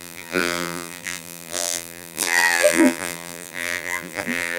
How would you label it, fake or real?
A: fake